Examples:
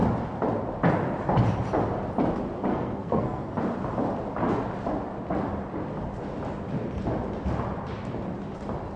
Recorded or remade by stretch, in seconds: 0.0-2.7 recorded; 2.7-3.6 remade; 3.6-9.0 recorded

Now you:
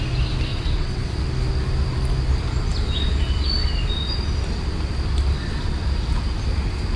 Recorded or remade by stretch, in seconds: 0.0-0.5 recorded; 0.5-1.2 remade; 1.2-7.0 recorded

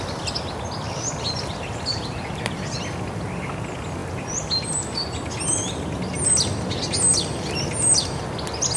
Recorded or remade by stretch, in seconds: 0.0-8.8 recorded

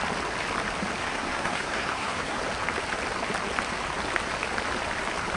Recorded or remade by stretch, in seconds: 0.0-1.0 recorded; 1.0-2.4 remade; 2.4-5.4 recorded

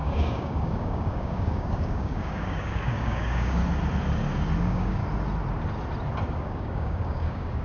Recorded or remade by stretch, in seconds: 0.0-3.6 remade; 3.6-4.6 recorded; 4.6-5.0 remade; 5.0-6.3 recorded; 6.3-7.6 remade

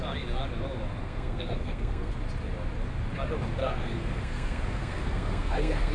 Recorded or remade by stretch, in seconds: 0.0-1.0 recorded; 1.0-2.1 remade; 2.1-3.6 recorded; 3.6-5.9 remade

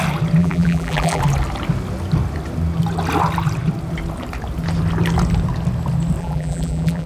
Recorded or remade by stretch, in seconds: 0.0-0.4 recorded; 0.4-1.2 remade; 1.2-6.2 recorded; 6.2-7.1 remade